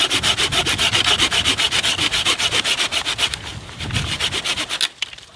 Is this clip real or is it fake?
real